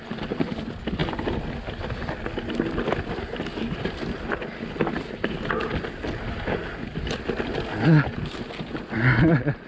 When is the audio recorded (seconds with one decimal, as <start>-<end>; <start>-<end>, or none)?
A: 0.0-9.7